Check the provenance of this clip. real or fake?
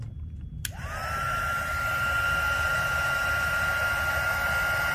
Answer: real